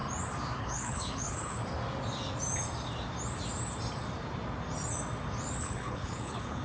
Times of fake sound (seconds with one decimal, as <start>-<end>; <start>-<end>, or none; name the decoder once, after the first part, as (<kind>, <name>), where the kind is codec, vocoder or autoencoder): 0.6-1.6 (codec, HILCodec); 5.6-6.6